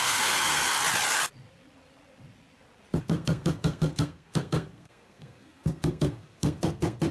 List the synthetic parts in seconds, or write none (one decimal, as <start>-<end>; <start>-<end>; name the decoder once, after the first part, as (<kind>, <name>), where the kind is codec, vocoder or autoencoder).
0.0-0.6 (codec, SNAC); 3.0-7.1